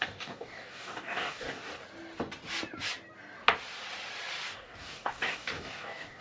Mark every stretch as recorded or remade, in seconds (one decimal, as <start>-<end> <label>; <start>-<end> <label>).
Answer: 0.0-1.7 remade; 1.7-4.5 recorded; 4.5-6.2 remade